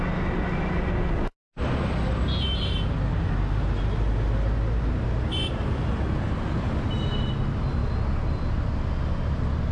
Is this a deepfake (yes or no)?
no